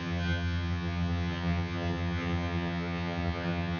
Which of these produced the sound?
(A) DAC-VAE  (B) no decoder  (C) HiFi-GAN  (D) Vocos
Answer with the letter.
C